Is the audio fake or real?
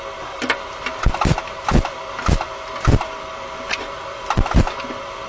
real